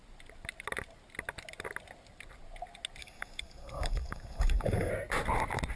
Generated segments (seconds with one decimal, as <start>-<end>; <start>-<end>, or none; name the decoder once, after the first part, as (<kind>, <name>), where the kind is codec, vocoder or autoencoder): 3.0-4.9 (codec, DAC)